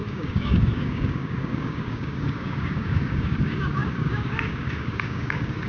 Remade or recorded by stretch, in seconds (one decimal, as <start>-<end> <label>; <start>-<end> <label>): 0.0-5.7 remade